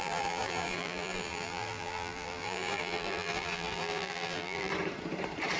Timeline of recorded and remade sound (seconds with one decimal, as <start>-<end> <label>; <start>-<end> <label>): 0.0-4.7 remade; 4.7-5.6 recorded